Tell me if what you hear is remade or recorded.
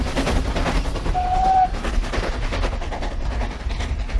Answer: recorded